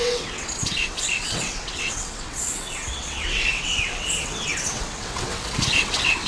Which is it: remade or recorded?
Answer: remade